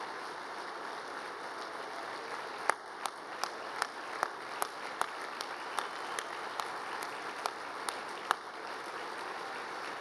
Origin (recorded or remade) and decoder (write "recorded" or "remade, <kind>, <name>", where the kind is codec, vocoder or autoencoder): recorded